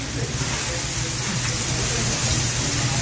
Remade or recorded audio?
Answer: recorded